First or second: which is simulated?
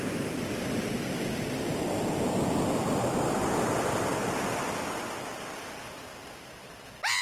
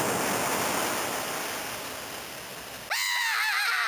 first